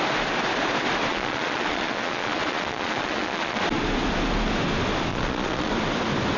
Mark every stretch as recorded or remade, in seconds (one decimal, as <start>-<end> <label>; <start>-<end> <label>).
0.0-1.1 recorded; 1.1-3.6 remade; 3.6-5.1 recorded; 5.1-5.7 remade; 5.7-6.4 recorded